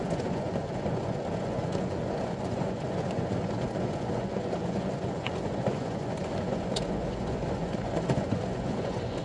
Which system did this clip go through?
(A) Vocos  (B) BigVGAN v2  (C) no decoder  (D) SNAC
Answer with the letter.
A